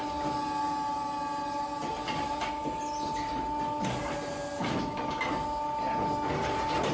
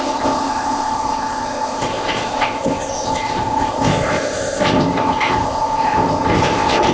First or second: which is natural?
first